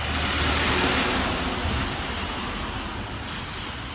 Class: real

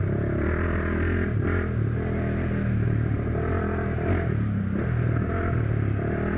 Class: real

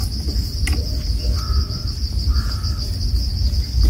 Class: real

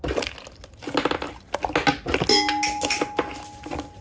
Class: real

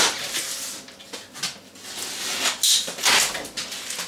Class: real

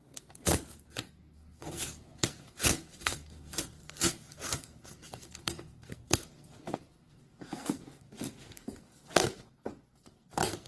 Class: fake